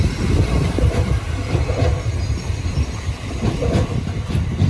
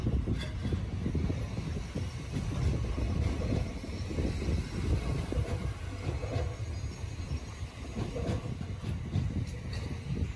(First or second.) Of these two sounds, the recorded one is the second